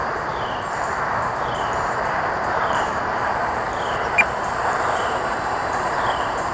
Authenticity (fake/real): fake